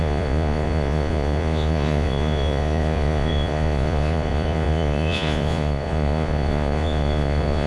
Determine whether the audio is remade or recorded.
remade